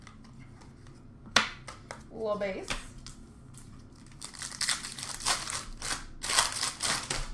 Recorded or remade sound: recorded